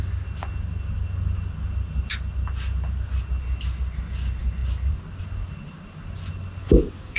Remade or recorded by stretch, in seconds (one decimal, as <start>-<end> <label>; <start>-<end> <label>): 0.0-6.6 recorded; 6.6-7.2 remade